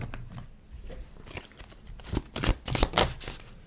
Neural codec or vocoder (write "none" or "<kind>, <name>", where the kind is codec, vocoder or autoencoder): none